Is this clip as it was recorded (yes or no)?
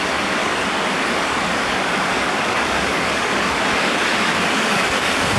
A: no